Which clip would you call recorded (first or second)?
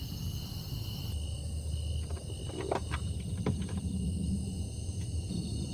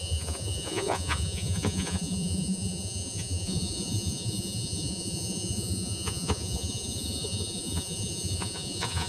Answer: first